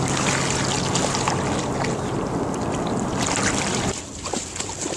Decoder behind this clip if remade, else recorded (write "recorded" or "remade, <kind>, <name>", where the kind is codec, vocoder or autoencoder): recorded